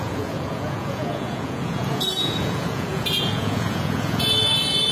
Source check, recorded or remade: remade